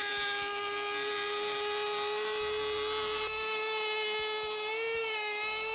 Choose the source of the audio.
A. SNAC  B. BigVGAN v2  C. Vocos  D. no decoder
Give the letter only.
D